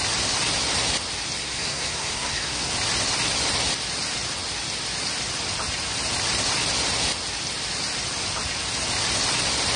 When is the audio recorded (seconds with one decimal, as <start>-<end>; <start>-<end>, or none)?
0.0-1.4; 2.7-9.8